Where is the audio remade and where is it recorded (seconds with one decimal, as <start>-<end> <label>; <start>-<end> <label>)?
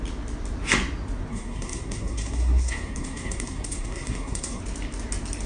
0.0-1.3 recorded; 1.3-4.6 remade; 4.6-5.5 recorded